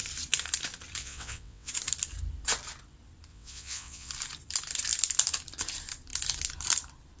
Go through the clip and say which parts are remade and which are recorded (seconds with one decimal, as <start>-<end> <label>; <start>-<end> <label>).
0.0-1.0 recorded; 1.0-1.7 remade; 1.7-3.3 recorded; 3.3-4.1 remade; 4.1-7.2 recorded